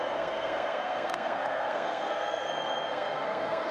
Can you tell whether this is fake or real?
fake